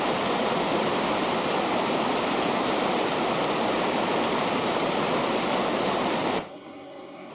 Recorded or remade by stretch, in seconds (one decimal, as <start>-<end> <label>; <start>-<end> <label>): 0.0-6.5 recorded; 6.5-7.3 remade